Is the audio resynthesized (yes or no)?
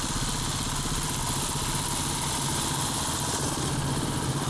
no